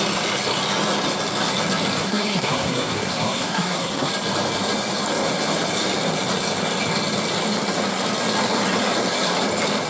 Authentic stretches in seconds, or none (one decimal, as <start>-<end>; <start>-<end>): 0.0-2.0; 4.1-9.9